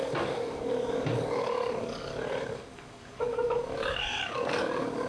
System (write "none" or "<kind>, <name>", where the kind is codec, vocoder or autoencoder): codec, DAC